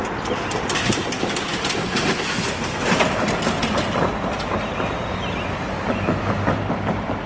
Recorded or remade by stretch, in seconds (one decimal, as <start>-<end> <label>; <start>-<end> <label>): 0.0-7.3 recorded